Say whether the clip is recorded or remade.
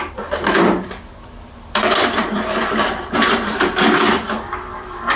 remade